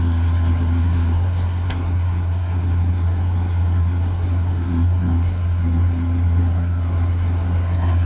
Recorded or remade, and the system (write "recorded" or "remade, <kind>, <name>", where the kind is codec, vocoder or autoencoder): remade, codec, SNAC